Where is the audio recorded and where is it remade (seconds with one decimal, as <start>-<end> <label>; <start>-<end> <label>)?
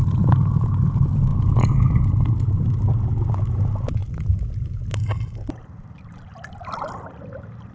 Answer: 0.0-4.0 recorded; 4.0-7.2 remade; 7.2-7.7 recorded